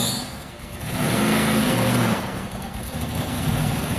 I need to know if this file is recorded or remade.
remade